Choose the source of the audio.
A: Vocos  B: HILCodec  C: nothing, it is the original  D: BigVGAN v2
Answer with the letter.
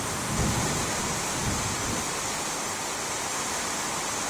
C